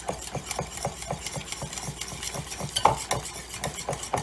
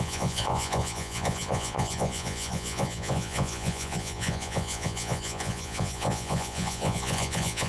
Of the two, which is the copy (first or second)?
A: second